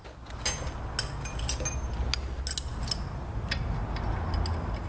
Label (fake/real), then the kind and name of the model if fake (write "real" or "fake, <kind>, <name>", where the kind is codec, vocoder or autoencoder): real